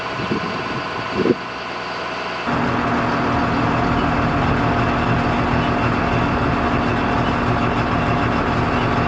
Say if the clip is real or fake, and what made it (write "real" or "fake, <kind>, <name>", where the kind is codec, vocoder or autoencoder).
real